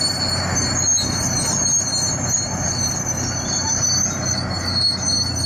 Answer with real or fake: real